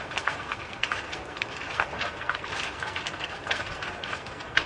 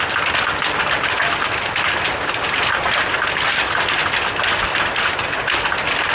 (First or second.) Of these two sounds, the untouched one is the second